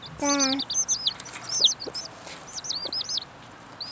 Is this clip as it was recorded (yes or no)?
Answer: yes